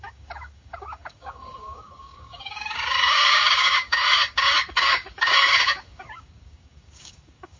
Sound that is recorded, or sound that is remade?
remade